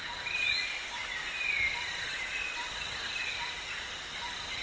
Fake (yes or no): no